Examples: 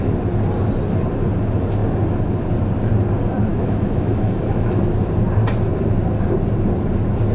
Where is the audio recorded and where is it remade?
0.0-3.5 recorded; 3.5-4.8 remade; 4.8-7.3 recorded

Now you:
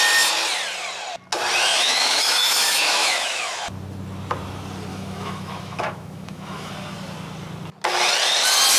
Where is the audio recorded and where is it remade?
0.0-1.7 recorded; 1.7-3.7 remade; 3.7-4.9 recorded; 4.9-6.7 remade; 6.7-8.8 recorded

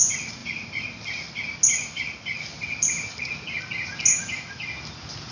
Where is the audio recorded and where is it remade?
0.0-4.1 recorded; 4.1-4.7 remade; 4.7-5.3 recorded

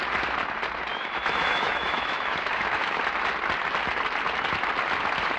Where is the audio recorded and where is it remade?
0.0-0.9 recorded; 0.9-3.0 remade; 3.0-5.4 recorded